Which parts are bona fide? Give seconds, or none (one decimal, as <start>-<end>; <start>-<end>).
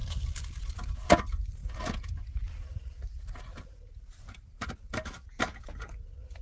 0.6-6.4